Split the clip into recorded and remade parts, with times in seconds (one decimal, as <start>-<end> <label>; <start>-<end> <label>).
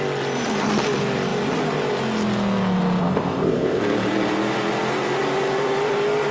0.0-3.0 recorded; 3.0-3.8 remade; 3.8-6.3 recorded